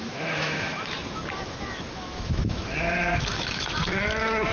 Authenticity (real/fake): fake